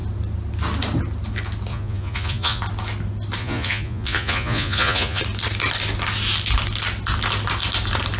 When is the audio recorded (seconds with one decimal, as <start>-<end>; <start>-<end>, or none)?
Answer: 0.0-1.7; 2.6-3.4; 5.2-8.2